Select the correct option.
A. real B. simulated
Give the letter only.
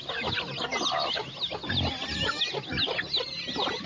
A